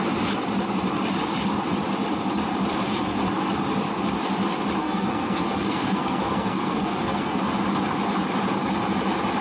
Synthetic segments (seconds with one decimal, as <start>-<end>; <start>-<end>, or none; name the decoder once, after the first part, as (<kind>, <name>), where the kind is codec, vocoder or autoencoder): 4.8-7.4 (codec, SNAC)